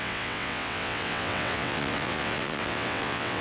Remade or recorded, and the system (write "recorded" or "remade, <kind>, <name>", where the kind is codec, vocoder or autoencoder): remade, vocoder, WaveNeXt